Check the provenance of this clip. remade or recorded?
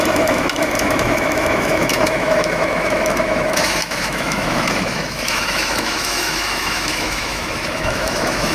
remade